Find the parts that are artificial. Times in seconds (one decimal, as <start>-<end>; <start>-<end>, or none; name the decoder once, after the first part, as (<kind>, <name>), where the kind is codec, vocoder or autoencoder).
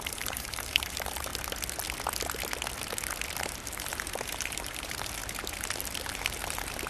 0.0-1.3 (vocoder, BigVGAN v2); 3.4-5.2; 6.1-6.9